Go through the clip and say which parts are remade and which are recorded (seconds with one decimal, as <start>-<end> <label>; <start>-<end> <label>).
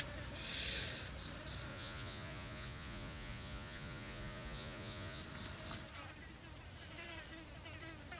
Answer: 0.0-1.7 recorded; 1.7-5.2 remade; 5.2-8.2 recorded